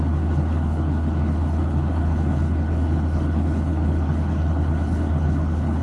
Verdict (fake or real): fake